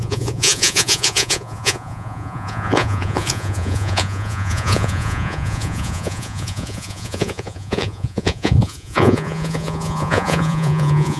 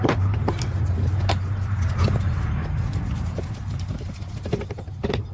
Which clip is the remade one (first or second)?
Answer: first